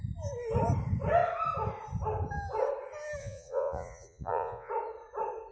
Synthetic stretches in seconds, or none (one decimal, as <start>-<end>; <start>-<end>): 3.2-4.7